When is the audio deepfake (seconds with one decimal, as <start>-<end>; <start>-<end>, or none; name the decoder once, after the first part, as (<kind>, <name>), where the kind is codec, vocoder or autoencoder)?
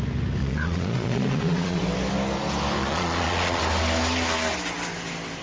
0.4-1.8 (vocoder, Vocos); 2.8-3.6